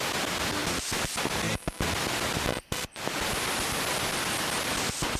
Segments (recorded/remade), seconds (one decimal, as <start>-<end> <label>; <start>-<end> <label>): 0.0-5.2 recorded